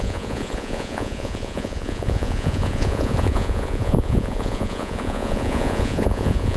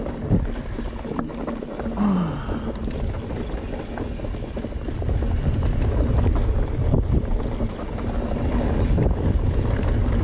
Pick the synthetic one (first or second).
first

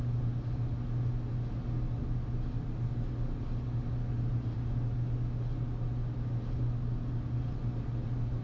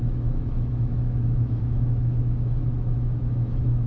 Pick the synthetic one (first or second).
second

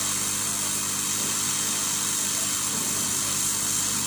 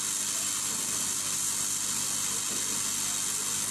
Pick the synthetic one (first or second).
first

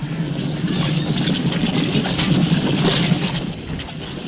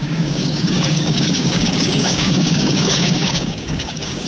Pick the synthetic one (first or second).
second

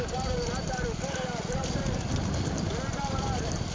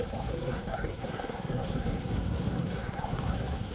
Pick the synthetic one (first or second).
second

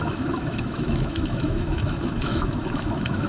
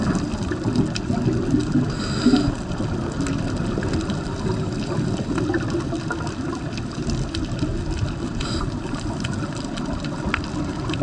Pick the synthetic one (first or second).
first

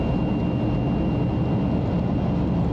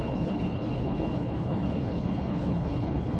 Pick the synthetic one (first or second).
second